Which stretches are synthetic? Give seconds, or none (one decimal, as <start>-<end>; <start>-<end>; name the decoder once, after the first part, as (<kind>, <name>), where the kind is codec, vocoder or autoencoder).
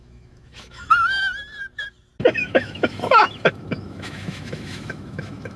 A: 0.0-0.9 (autoencoder, DAC-VAE); 2.2-5.6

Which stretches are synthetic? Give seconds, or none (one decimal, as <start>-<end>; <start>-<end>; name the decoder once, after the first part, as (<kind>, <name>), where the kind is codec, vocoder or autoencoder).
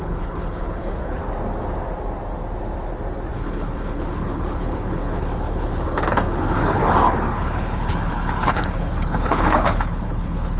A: 0.0-1.2 (codec, HILCodec); 3.3-6.8; 7.3-10.6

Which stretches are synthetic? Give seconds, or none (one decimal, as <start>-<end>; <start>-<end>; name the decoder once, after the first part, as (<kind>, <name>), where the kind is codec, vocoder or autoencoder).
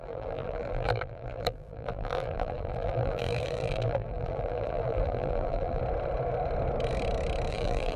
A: 0.0-5.8 (vocoder, BigVGAN v2); 7.5-8.0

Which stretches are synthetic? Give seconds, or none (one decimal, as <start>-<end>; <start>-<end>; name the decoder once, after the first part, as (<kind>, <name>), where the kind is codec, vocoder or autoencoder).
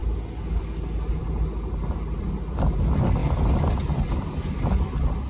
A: none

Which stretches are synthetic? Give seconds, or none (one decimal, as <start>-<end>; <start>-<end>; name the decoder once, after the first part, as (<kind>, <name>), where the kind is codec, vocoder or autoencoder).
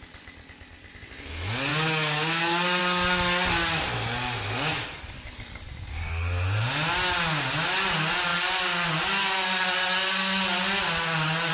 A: 1.7-2.8 (codec, DAC)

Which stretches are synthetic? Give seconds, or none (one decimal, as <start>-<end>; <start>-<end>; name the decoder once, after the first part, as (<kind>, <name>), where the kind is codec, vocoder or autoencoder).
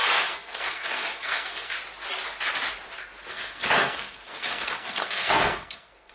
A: 0.0-1.7 (codec, SNAC); 3.3-6.1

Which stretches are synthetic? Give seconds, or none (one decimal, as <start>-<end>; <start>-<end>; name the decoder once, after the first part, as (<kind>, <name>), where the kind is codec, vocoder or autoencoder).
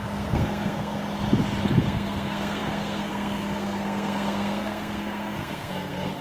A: 0.0-1.0 (codec, SNAC); 1.8-6.2